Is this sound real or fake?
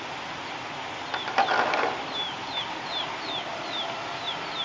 real